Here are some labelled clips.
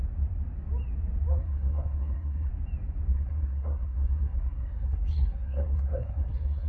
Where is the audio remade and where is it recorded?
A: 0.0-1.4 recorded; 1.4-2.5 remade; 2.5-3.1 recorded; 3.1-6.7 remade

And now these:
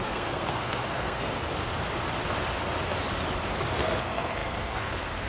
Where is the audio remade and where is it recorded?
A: 0.0-1.4 remade; 1.4-3.7 recorded; 3.7-5.3 remade

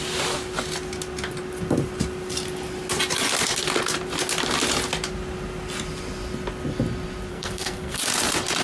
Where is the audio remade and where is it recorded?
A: 0.0-7.3 recorded; 7.3-8.0 remade; 8.0-8.6 recorded

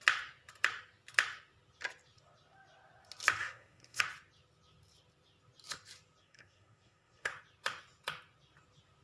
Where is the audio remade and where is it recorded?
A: 0.0-3.4 recorded; 3.4-4.0 remade; 4.0-6.2 recorded; 6.2-7.3 remade; 7.3-9.0 recorded